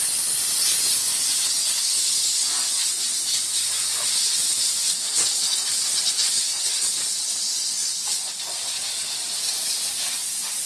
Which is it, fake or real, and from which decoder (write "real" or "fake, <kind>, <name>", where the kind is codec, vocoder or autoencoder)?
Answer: real